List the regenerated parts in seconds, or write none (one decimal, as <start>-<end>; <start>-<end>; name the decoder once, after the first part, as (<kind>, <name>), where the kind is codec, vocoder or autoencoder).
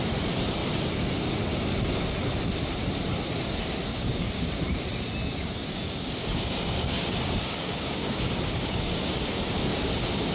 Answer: 3.9-4.6 (codec, DAC); 5.3-9.9